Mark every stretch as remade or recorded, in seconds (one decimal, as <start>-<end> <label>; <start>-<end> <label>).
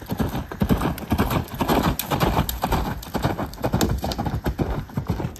0.0-5.4 recorded